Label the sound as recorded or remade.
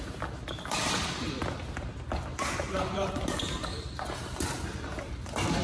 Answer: recorded